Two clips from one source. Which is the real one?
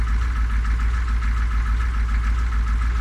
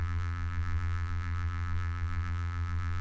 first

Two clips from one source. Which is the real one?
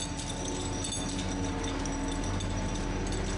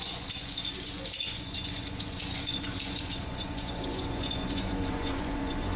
first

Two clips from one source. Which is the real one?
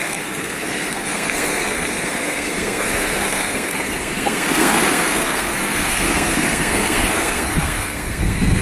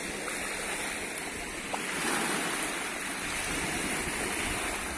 second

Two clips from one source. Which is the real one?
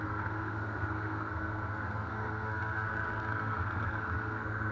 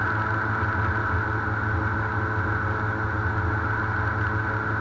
second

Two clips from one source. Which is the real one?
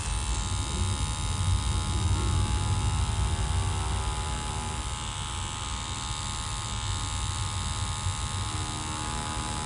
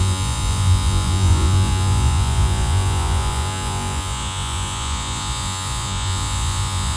first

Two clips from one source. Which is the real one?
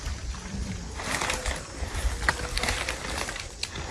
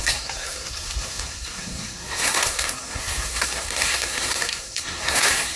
first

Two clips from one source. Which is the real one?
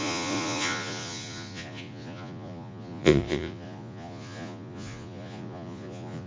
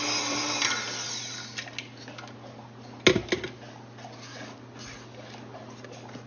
second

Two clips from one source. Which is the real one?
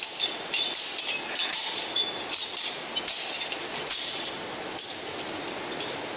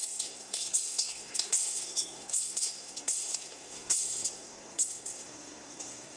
first